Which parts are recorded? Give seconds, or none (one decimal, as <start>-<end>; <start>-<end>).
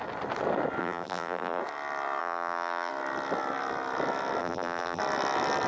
0.0-0.8; 1.6-2.2; 2.9-4.4; 5.0-5.7